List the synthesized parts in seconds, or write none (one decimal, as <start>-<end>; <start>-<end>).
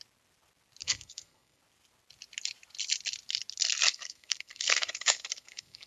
0.8-1.6; 3.9-5.9